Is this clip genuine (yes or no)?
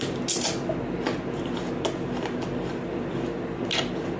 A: yes